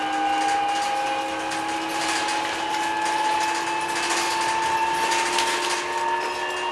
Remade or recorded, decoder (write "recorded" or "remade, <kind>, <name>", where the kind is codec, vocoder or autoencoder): recorded